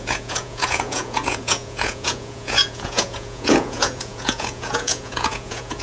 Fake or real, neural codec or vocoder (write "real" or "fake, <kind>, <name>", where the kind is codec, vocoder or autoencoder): fake, vocoder, Vocos